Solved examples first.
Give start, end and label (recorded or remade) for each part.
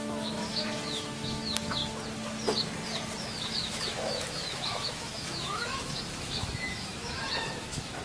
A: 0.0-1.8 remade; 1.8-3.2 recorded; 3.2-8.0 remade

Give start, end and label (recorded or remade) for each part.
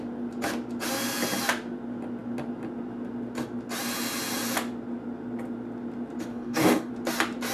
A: 0.0-6.3 recorded; 6.3-6.9 remade; 6.9-7.5 recorded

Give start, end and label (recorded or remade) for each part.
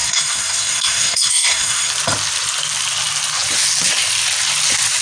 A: 0.0-1.9 remade; 1.9-5.0 recorded